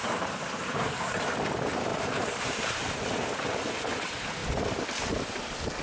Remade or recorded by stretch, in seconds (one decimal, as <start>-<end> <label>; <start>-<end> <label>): 0.0-1.3 remade; 1.3-1.9 recorded; 1.9-3.3 remade; 3.3-5.8 recorded